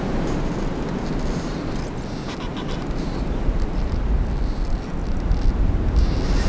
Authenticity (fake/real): real